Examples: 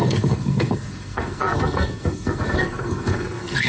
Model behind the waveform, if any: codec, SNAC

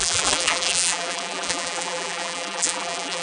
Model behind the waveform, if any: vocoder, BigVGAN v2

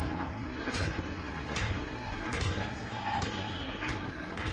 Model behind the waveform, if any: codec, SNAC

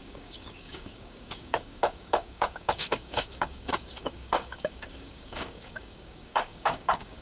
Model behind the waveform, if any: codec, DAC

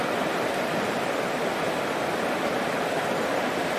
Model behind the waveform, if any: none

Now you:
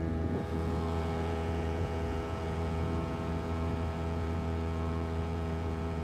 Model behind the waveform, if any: vocoder, Vocos